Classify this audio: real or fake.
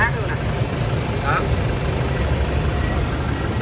real